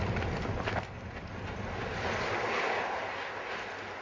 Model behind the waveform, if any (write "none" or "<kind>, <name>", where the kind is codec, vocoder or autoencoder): none